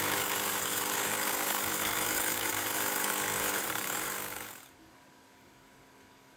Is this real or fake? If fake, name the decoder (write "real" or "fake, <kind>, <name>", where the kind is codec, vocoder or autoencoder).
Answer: fake, codec, DAC